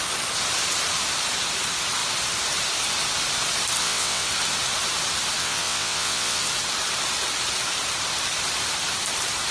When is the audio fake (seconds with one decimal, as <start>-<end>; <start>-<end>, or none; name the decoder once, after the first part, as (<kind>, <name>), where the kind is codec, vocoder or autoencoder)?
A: 3.8-4.3 (vocoder, WaveNeXt); 5.4-6.4